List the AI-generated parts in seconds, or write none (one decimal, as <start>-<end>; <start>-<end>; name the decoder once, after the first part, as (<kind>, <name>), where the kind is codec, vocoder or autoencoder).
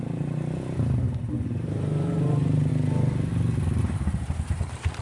0.0-2.7 (vocoder, BigVGAN v2); 3.8-5.0